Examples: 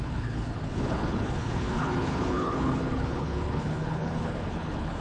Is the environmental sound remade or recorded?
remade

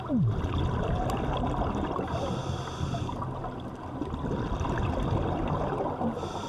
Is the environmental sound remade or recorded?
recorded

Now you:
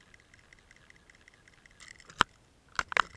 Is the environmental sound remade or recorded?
recorded